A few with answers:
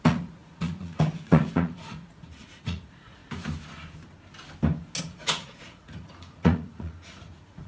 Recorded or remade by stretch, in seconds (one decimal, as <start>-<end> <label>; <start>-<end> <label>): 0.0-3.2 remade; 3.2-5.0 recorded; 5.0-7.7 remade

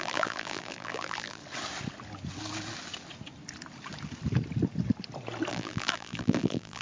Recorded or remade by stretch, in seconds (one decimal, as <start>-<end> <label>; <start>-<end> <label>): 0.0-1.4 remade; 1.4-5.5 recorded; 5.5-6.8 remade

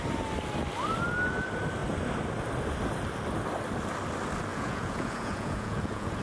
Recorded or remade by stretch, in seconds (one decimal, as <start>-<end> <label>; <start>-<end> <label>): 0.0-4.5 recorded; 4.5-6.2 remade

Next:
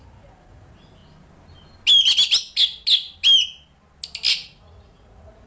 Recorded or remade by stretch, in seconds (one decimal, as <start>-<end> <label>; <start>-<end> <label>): 0.0-1.0 remade; 1.0-4.3 recorded; 4.3-5.5 remade

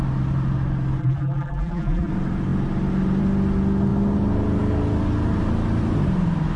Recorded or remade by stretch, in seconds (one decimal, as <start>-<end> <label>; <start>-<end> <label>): 0.0-1.0 recorded; 1.0-2.1 remade; 2.1-6.6 recorded

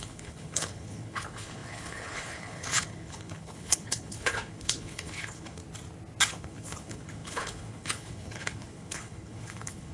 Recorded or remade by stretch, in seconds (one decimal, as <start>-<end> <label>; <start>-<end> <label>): 0.0-5.6 remade; 5.6-6.3 recorded; 6.3-9.9 remade

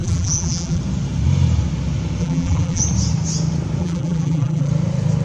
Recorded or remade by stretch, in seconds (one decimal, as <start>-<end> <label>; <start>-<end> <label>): 0.0-0.8 remade; 0.8-2.2 recorded; 2.2-2.8 remade; 2.8-3.8 recorded; 3.8-4.7 remade; 4.7-5.2 recorded

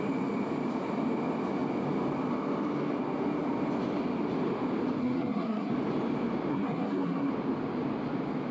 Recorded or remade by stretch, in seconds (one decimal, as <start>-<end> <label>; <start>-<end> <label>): 0.0-5.0 recorded; 5.0-5.7 remade; 5.7-6.5 recorded; 6.5-7.3 remade; 7.3-8.5 recorded